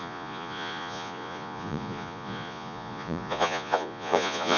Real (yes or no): no